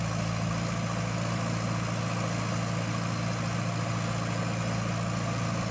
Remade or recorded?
recorded